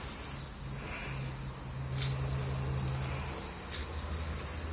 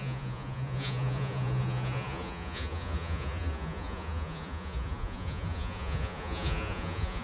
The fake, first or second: second